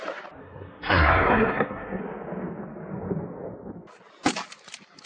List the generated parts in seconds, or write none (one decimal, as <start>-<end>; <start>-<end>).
0.4-2.0